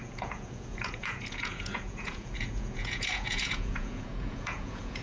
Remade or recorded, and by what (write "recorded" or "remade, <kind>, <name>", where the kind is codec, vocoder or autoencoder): remade, vocoder, Vocos